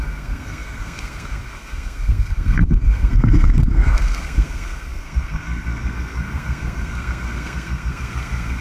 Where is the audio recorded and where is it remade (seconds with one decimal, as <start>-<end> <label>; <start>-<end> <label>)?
0.0-8.6 remade